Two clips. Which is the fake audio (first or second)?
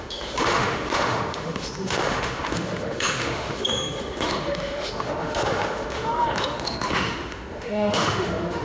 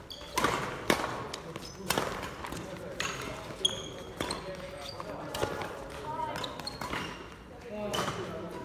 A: first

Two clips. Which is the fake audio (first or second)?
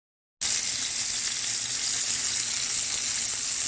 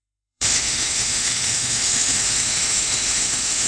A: second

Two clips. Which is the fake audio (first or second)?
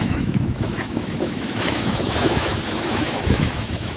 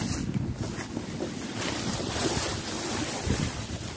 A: first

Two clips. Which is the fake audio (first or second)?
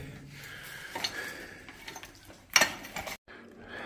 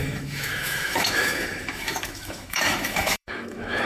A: second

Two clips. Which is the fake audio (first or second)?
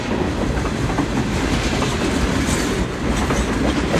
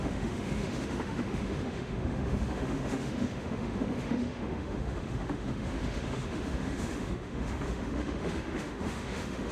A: second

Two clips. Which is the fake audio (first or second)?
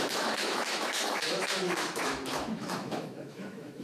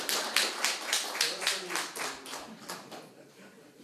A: first